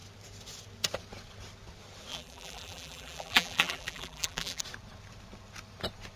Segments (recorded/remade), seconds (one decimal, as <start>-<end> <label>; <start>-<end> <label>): 0.0-2.1 recorded; 2.1-4.6 remade; 4.6-6.2 recorded